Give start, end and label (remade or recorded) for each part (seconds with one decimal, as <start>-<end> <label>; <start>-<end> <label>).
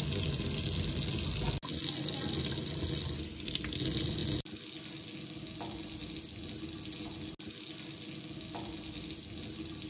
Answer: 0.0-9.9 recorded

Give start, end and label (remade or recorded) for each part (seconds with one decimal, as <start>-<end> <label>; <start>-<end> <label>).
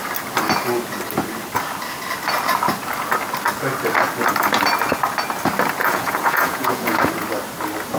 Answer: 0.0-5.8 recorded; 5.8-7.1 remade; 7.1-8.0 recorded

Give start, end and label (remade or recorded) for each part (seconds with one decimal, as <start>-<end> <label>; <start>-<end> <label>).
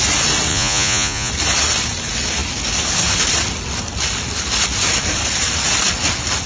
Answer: 0.0-0.5 recorded; 0.5-1.3 remade; 1.3-6.5 recorded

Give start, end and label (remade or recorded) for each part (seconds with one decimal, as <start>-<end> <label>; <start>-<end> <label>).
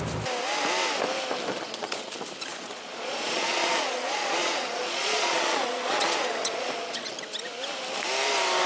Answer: 0.0-1.5 recorded; 1.5-2.1 remade; 2.1-2.5 recorded; 2.5-7.1 remade; 7.1-8.7 recorded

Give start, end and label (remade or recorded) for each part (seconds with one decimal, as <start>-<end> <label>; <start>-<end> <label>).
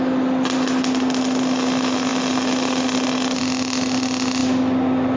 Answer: 0.0-5.2 recorded